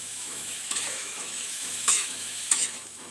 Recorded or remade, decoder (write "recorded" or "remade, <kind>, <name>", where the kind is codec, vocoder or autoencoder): remade, autoencoder, DAC-VAE